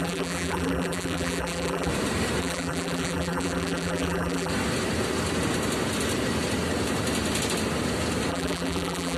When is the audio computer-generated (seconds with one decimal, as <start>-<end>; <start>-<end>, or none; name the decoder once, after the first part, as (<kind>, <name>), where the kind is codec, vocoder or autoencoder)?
0.0-1.9 (vocoder, BigVGAN v2); 2.4-4.5; 8.3-9.2